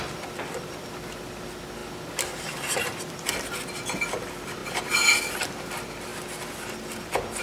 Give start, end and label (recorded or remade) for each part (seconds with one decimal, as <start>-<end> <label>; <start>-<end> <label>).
0.0-7.4 recorded